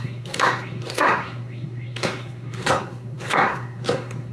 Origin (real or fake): fake